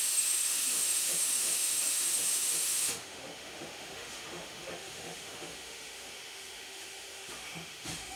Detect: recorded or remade remade